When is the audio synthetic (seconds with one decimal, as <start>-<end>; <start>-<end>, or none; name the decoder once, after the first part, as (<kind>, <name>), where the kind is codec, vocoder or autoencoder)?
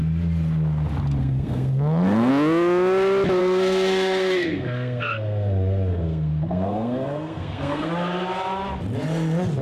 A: 1.2-2.3 (codec, SNAC); 3.4-7.9